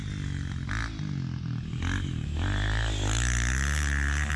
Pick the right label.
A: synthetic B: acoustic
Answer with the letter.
B